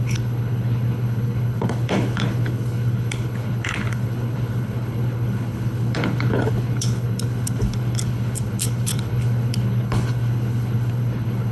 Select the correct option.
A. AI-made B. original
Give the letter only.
A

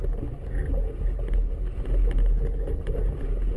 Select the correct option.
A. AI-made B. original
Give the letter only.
B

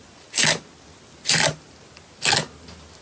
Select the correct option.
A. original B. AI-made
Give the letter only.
A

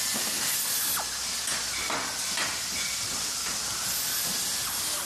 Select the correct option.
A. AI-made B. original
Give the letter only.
B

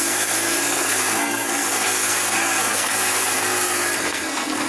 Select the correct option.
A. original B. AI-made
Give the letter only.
B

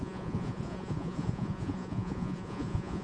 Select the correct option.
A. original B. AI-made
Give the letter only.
B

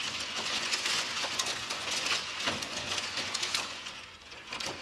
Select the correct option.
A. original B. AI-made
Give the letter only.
B